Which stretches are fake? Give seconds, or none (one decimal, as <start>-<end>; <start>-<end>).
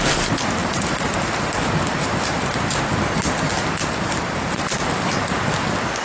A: 0.6-2.5; 3.8-4.5